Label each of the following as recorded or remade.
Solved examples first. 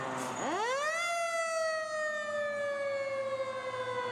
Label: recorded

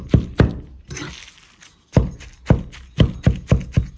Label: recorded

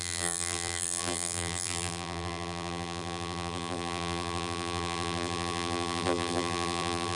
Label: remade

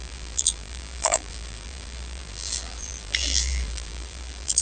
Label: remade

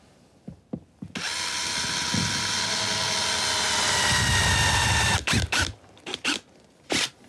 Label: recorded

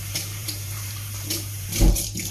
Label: remade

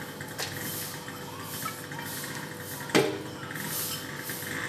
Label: recorded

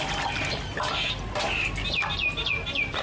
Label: recorded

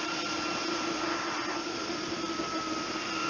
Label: remade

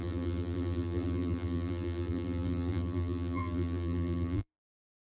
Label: remade